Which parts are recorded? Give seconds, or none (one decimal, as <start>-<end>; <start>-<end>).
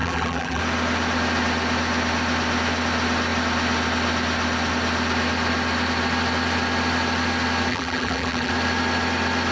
0.6-7.7; 8.5-9.5